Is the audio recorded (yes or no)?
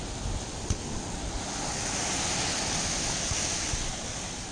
yes